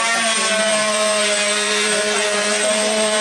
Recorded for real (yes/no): no